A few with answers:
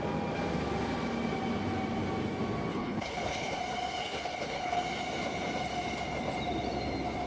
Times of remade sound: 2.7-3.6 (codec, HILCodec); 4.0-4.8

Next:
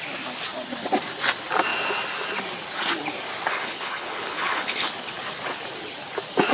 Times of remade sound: 3.5-4.9 (codec, HILCodec)